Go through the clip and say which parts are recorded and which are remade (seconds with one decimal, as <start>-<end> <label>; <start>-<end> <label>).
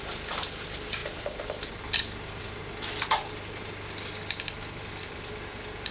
0.0-2.6 remade; 2.6-4.9 recorded; 4.9-5.9 remade